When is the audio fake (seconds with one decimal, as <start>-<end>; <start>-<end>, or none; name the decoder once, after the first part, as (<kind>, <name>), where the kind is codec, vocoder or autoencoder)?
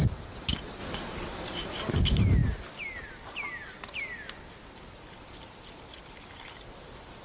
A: none